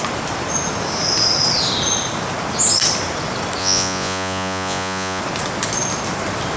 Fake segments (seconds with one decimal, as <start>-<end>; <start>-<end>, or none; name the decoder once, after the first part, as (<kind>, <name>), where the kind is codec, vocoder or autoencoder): 3.6-5.2 (vocoder, Vocos)